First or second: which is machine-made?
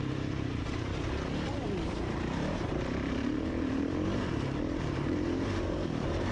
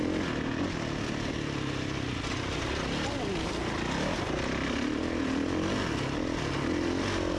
first